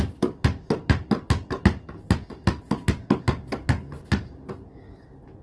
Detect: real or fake real